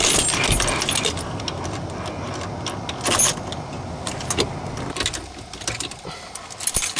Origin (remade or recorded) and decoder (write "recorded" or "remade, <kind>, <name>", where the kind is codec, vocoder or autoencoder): recorded